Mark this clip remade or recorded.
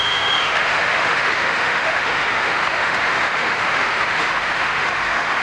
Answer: remade